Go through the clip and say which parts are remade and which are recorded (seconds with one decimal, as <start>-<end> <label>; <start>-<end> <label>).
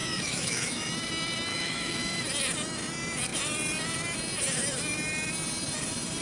0.0-0.9 remade; 0.9-1.5 recorded; 1.5-2.2 remade; 2.2-6.2 recorded